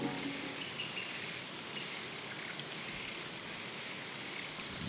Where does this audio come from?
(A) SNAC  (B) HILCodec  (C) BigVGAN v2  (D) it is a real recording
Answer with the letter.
D